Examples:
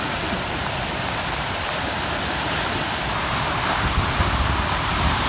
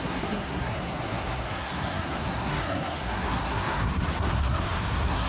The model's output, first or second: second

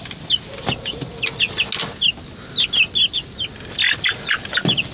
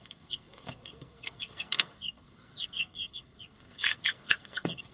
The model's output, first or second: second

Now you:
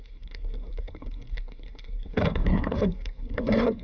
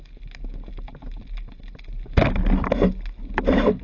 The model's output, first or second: first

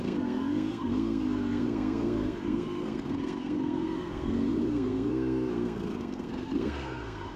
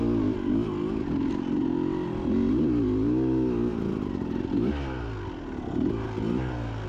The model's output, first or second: first